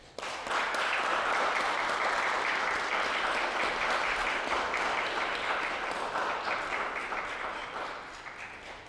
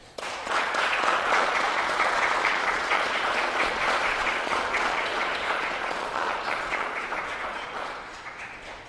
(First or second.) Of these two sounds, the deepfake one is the second